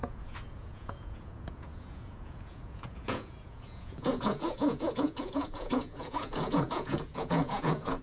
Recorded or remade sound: remade